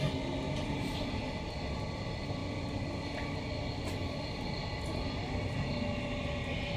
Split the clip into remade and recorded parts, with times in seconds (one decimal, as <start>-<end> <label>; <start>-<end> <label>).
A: 0.0-4.0 recorded; 4.0-4.7 remade; 4.7-6.8 recorded